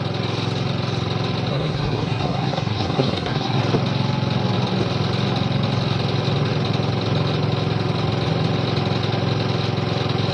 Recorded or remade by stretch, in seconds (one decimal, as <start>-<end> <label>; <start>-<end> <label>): 0.0-1.5 recorded; 1.5-3.6 remade; 3.6-10.3 recorded